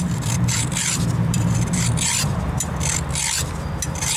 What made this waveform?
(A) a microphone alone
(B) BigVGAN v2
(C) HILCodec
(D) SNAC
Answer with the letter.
B